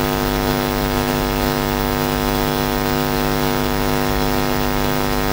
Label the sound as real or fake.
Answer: fake